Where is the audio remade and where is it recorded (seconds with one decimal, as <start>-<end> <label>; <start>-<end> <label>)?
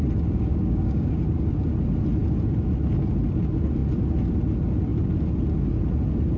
0.0-0.5 recorded; 0.5-1.2 remade; 1.2-6.4 recorded